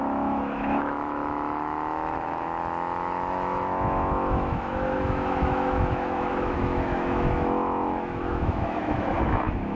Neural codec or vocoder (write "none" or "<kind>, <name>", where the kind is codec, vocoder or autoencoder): autoencoder, DAC-VAE